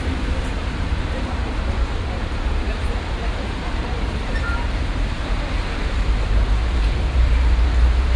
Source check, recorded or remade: remade